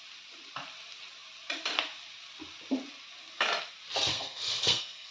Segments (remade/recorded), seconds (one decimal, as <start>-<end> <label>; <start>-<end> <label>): 0.0-4.1 recorded; 4.1-5.1 remade